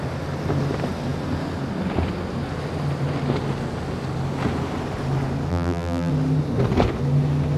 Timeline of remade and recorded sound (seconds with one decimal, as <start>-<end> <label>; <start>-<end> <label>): 0.0-5.5 recorded; 5.5-6.1 remade; 6.1-7.6 recorded